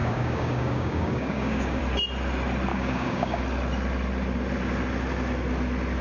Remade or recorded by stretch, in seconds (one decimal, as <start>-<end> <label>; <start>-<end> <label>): 0.0-1.8 remade; 1.8-2.7 recorded; 2.7-3.4 remade; 3.4-6.0 recorded